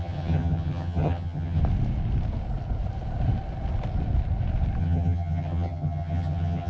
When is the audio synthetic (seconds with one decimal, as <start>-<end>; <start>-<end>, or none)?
0.0-1.6; 4.8-6.7